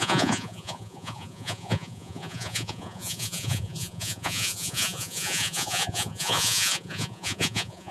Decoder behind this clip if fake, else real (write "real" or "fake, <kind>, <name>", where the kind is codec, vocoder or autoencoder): fake, vocoder, Vocos